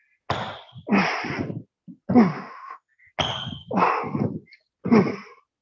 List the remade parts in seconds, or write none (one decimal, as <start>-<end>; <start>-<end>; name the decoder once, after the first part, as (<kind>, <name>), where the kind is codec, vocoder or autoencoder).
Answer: 2.3-3.1 (autoencoder, DAC-VAE)